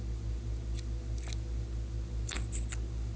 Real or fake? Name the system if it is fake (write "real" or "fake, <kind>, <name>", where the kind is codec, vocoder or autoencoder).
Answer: real